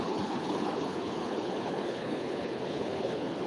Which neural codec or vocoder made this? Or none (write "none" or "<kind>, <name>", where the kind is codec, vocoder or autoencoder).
codec, HILCodec